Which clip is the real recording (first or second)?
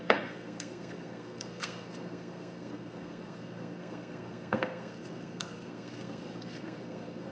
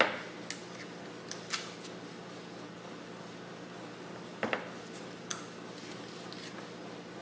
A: second